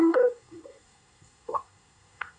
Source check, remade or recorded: remade